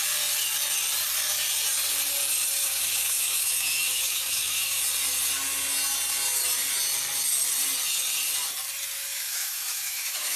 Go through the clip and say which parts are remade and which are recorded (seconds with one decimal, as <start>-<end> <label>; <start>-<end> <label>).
0.0-2.6 recorded; 2.6-4.8 remade; 4.8-9.1 recorded; 9.1-10.4 remade